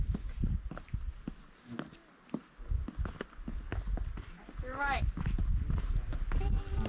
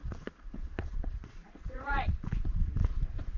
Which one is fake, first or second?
second